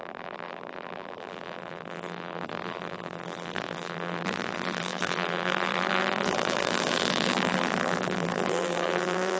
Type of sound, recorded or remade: remade